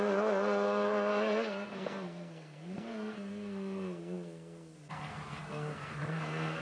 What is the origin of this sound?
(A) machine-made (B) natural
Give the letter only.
A